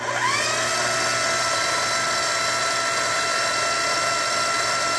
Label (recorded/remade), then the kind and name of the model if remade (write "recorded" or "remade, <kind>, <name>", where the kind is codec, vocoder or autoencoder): recorded